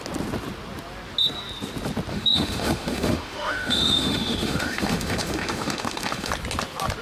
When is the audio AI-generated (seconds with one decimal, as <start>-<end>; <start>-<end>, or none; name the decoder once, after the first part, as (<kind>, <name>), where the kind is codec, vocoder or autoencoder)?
2.1-6.3 (autoencoder, DAC-VAE)